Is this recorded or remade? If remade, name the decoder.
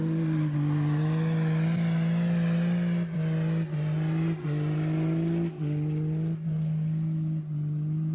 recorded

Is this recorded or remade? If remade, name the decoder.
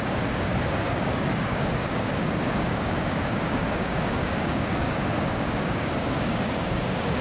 remade, codec, DAC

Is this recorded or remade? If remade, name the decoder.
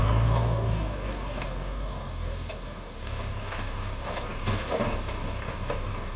remade, codec, DAC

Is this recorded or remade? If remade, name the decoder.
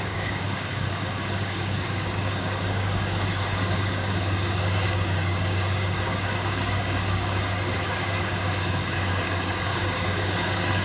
remade, codec, DAC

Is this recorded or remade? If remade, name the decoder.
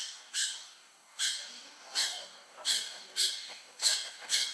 remade, codec, DAC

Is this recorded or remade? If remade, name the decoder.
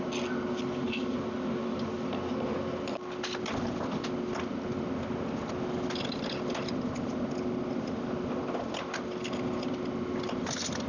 recorded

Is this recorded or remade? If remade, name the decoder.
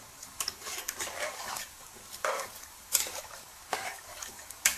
remade, codec, DAC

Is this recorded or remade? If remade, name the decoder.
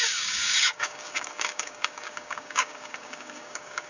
remade, codec, DAC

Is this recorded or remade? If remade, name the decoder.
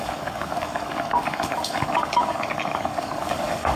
remade, codec, DAC